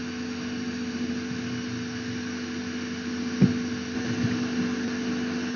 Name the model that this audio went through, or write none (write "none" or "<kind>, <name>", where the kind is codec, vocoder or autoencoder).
none